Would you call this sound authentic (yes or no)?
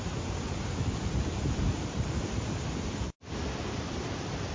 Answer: no